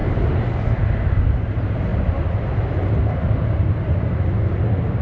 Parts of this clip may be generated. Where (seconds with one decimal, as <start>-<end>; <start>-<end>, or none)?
none